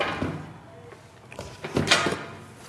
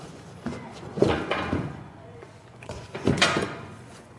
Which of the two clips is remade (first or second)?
second